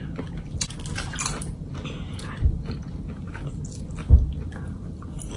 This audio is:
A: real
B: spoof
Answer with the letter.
A